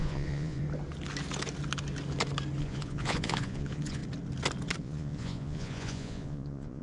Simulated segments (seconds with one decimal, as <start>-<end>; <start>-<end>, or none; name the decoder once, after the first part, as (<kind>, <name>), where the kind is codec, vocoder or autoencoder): 0.0-0.6 (vocoder, Vocos); 2.6-4.0; 4.8-6.8